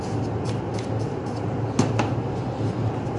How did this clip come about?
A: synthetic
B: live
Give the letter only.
B